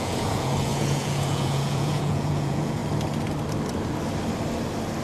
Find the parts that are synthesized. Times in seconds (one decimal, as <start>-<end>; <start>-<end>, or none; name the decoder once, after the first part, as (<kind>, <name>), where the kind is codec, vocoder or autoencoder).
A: 0.0-2.8 (vocoder, Vocos)